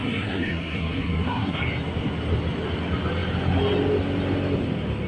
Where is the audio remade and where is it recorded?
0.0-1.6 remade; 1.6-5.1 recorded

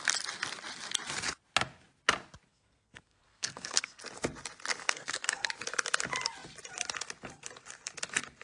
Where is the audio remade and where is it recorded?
0.0-2.5 recorded; 2.5-4.0 remade; 4.0-4.8 recorded; 4.8-5.5 remade; 5.5-8.4 recorded